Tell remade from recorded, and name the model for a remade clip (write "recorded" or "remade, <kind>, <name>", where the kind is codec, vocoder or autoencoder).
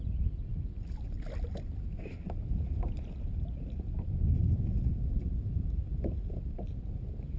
recorded